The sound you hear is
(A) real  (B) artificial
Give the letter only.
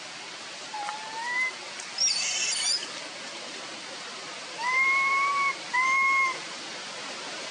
B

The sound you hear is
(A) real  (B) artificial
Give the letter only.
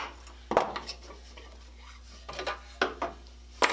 A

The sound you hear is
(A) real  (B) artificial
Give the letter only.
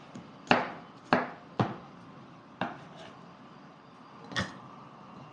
A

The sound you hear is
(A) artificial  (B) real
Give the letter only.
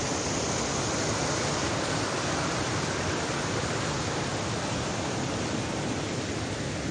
B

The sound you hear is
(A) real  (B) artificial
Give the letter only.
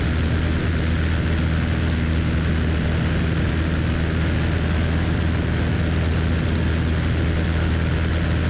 A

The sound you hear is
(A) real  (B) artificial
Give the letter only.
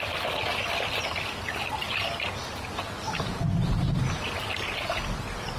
A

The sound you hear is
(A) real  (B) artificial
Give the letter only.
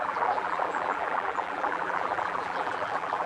B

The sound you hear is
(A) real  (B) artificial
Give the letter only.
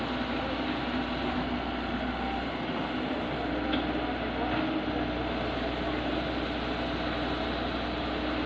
A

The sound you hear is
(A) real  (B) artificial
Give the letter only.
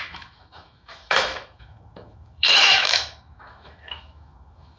B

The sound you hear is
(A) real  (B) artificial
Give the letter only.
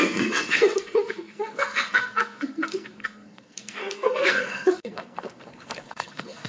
B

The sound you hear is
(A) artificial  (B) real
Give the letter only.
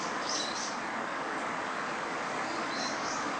A